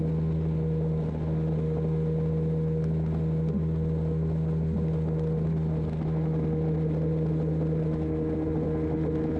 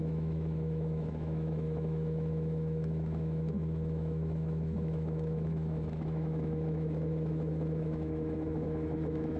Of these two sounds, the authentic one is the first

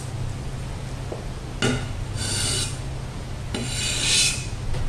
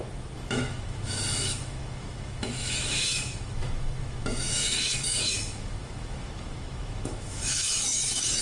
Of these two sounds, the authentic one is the first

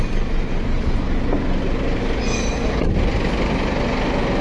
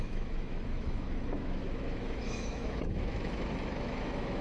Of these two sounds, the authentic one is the first